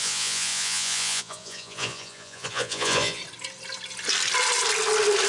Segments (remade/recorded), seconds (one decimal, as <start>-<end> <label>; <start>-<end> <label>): 0.0-3.2 remade; 3.2-5.3 recorded